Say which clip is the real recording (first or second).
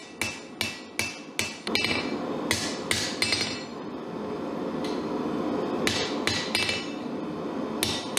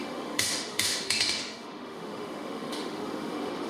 first